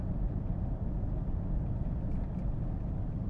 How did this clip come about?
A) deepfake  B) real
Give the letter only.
B